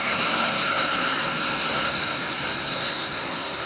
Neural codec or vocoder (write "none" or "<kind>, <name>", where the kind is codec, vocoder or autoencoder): codec, SNAC